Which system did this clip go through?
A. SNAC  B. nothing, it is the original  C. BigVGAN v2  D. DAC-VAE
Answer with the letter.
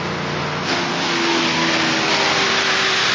B